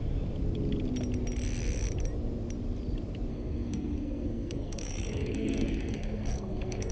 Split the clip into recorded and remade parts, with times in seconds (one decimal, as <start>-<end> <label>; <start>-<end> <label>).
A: 0.0-3.3 recorded; 3.3-6.9 remade